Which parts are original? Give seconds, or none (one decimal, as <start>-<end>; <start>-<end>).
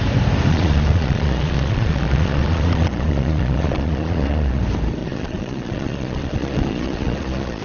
0.0-0.5; 4.6-5.0